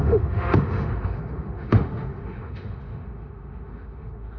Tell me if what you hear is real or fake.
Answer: fake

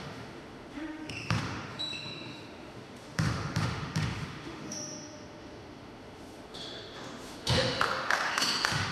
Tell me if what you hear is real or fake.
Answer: fake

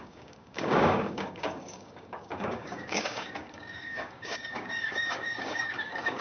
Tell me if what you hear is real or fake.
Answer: fake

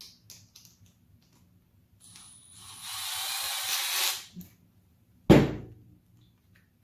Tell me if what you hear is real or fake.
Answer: real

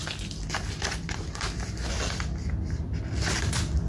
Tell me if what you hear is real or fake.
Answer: real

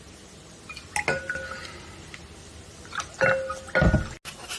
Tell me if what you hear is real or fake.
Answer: real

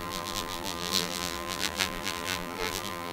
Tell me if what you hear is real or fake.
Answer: fake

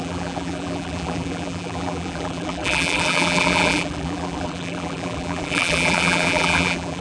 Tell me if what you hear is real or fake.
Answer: fake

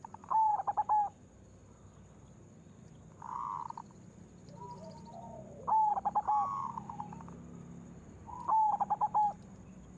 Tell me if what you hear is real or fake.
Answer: real